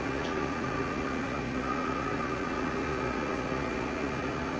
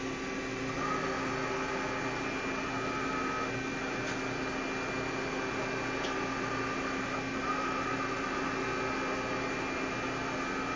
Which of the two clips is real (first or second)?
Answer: second